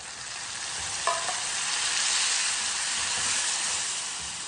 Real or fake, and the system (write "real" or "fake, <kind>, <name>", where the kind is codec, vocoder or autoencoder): real